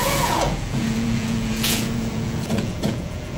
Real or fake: fake